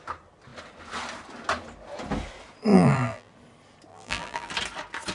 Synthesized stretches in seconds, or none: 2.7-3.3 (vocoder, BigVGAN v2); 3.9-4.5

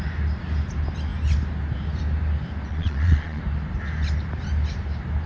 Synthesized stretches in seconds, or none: 2.7-3.4 (vocoder, Vocos)